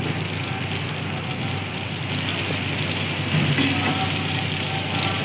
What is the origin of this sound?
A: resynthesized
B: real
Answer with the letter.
B